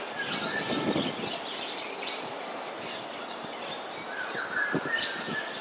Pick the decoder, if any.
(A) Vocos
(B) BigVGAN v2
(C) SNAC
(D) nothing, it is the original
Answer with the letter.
D